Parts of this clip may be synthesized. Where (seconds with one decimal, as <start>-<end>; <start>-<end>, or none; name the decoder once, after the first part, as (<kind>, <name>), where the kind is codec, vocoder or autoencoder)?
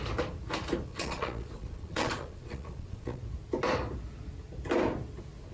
0.9-3.2 (vocoder, Vocos)